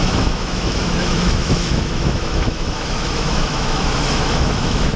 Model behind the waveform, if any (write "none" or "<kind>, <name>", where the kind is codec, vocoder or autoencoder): autoencoder, DAC-VAE